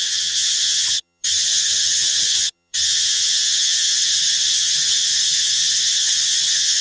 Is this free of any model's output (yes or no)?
no